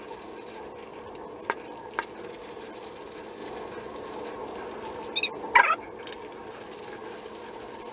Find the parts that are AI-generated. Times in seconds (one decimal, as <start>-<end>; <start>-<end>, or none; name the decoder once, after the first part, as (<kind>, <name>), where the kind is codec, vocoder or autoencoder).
none